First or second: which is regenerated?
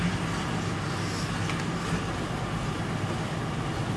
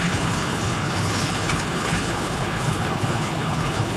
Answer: second